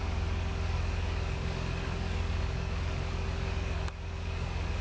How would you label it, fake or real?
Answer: fake